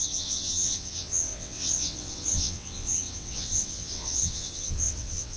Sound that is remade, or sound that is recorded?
remade